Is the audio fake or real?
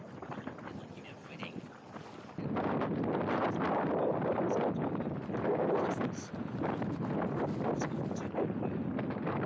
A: real